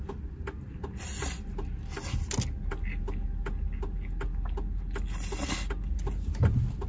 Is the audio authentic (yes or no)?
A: yes